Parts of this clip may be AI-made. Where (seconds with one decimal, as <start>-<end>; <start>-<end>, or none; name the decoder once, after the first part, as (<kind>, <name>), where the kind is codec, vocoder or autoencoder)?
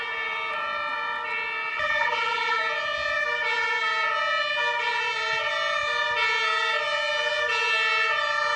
1.7-2.6 (vocoder, BigVGAN v2)